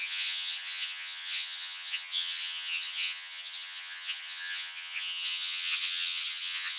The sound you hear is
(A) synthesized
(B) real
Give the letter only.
A